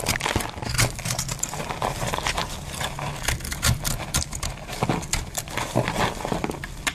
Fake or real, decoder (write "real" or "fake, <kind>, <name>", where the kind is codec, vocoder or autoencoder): real